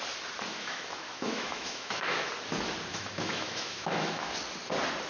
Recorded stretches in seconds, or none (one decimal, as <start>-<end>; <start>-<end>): 0.0-0.5; 2.3-2.9; 4.3-5.1